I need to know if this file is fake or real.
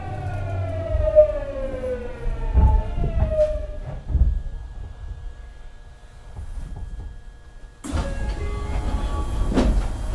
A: real